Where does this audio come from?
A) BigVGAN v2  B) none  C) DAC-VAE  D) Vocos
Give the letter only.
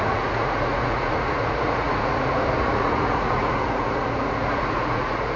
D